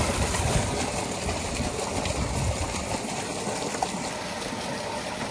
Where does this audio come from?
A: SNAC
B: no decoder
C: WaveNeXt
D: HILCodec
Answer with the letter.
B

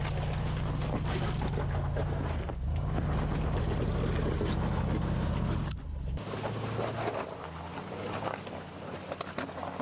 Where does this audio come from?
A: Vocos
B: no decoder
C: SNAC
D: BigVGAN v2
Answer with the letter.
B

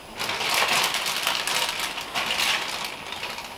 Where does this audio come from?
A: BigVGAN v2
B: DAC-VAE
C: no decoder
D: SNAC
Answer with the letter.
C